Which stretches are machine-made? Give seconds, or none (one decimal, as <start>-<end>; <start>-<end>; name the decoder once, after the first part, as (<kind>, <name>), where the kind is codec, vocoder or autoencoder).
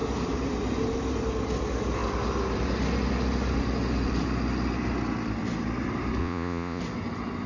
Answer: 6.2-6.8 (vocoder, Vocos)